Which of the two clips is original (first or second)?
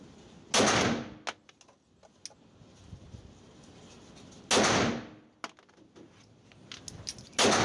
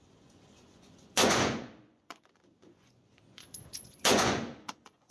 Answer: first